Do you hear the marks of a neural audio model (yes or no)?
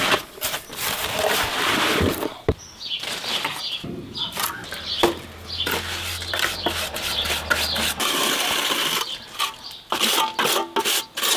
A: no